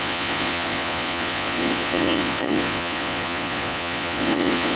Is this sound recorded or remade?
remade